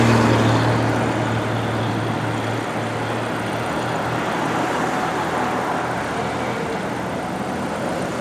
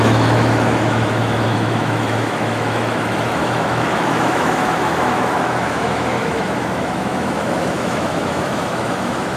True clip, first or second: first